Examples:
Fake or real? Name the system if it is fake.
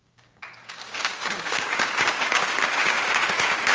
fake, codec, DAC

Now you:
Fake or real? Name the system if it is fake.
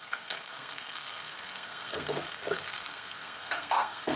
fake, codec, SNAC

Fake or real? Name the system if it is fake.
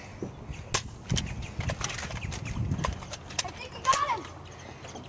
real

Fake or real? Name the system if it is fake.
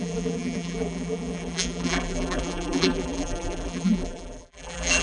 fake, vocoder, BigVGAN v2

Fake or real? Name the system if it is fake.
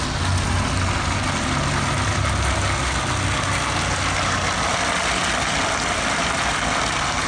real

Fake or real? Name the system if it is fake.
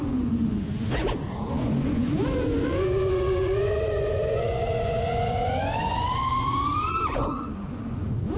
fake, vocoder, Vocos